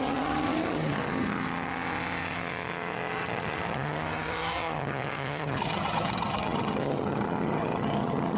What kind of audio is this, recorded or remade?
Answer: remade